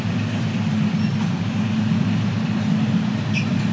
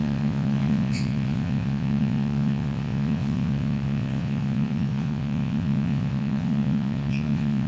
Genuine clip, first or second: first